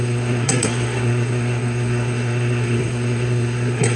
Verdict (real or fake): fake